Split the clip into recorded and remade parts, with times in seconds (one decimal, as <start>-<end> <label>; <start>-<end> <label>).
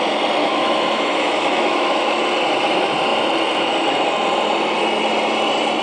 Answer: 0.0-0.4 recorded; 0.4-2.2 remade; 2.2-5.8 recorded